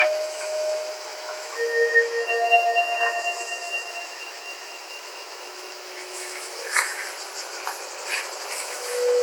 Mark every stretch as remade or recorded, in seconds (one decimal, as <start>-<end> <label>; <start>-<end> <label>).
0.0-7.0 remade; 7.0-8.6 recorded; 8.6-9.2 remade